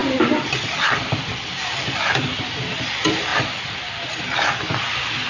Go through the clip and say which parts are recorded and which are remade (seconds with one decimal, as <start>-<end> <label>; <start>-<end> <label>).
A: 0.0-5.3 remade